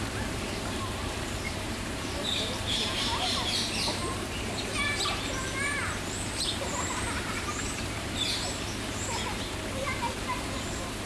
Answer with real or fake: fake